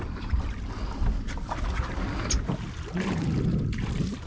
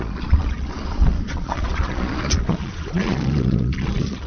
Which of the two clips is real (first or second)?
first